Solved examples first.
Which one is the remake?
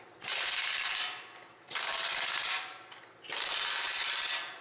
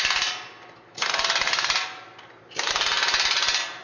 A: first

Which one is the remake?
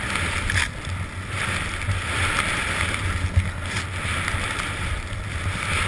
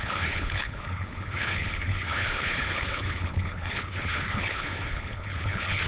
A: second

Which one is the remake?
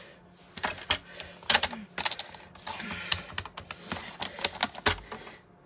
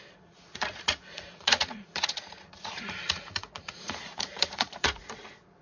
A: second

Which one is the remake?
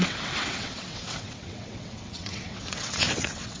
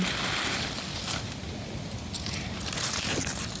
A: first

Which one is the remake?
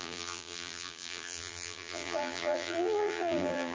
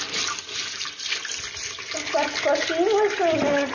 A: first